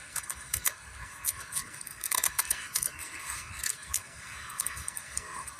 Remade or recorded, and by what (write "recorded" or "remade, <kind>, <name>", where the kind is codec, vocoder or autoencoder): remade, codec, SNAC